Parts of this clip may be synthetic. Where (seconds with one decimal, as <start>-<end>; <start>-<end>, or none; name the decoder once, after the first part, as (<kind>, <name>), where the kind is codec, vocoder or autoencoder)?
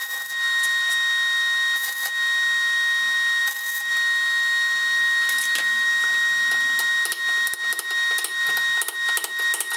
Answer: none